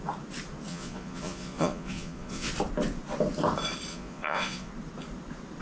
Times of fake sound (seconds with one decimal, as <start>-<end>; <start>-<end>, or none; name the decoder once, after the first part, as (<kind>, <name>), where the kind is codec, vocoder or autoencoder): 0.7-2.5 (vocoder, Vocos); 3.9-4.7